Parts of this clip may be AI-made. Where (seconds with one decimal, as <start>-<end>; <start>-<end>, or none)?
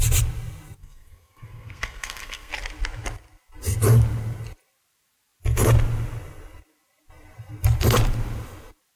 0.8-2.5